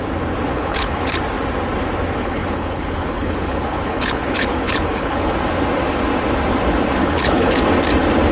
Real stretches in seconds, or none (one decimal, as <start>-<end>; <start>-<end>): 0.0-0.5; 1.2-2.2; 5.3-7.0; 7.6-8.3